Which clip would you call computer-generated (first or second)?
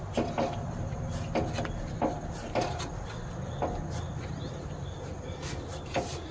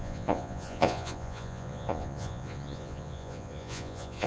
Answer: second